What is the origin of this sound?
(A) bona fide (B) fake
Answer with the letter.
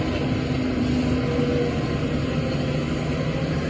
A